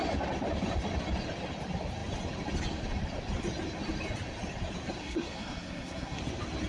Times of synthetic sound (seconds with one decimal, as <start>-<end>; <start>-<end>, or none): 5.0-6.2

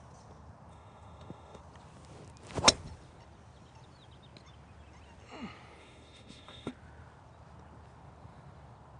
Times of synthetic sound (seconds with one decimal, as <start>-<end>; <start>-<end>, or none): 0.7-1.6; 5.8-6.7

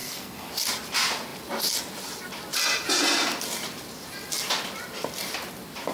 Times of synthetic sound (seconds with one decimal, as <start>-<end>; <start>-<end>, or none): 0.0-0.5

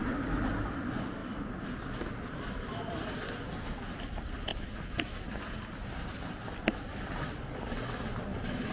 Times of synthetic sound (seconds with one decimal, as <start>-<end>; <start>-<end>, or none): none

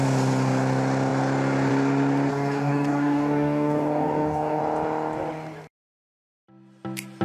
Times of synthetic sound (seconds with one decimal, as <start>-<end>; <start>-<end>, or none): 2.3-4.6